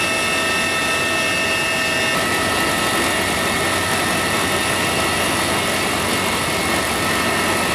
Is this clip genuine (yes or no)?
yes